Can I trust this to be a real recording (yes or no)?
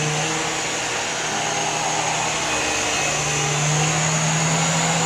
yes